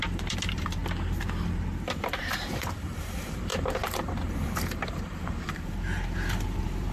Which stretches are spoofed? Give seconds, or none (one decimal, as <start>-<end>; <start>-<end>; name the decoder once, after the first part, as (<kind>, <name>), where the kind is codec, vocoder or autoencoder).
0.0-0.8 (vocoder, BigVGAN v2); 2.2-6.9